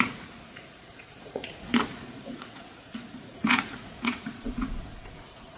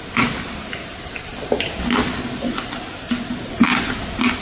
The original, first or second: second